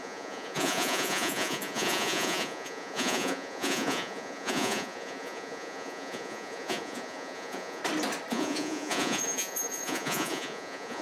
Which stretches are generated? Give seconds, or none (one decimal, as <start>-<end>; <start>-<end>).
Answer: 0.0-7.8; 8.3-11.0